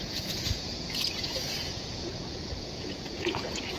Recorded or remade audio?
remade